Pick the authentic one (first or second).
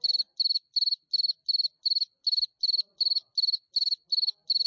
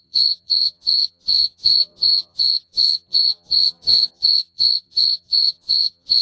first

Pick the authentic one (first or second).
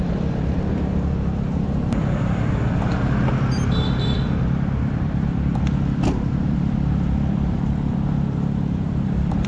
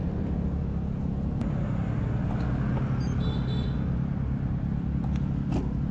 second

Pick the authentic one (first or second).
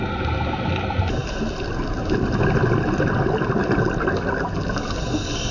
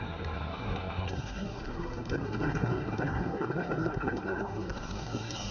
first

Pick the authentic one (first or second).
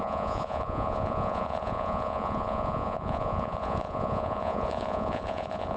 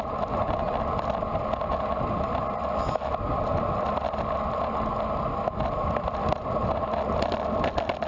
second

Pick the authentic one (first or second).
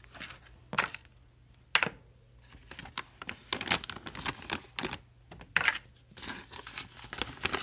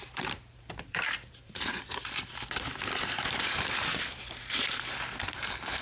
first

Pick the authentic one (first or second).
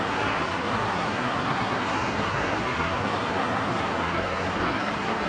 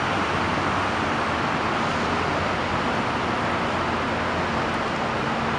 second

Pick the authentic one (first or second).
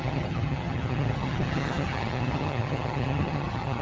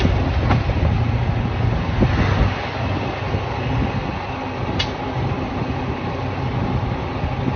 second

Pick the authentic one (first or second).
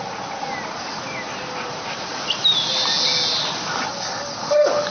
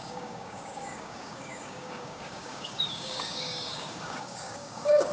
first